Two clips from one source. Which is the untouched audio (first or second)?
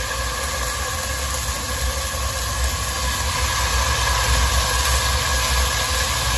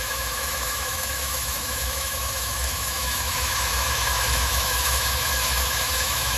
first